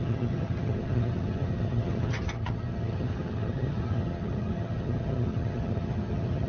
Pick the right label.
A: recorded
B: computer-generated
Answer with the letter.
B